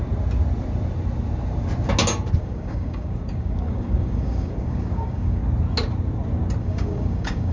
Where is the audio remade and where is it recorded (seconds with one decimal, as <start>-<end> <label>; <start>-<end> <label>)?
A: 0.0-2.4 recorded; 2.4-5.4 remade; 5.4-6.6 recorded; 6.6-7.5 remade